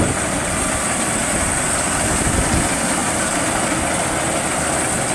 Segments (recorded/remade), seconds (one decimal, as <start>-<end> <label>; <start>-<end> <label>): 0.0-1.2 recorded; 1.2-2.5 remade; 2.5-3.0 recorded; 3.0-3.6 remade; 3.6-5.1 recorded

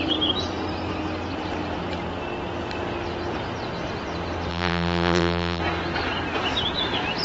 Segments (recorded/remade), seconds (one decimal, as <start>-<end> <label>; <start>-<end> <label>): 0.0-4.5 recorded; 4.5-5.6 remade; 5.6-7.2 recorded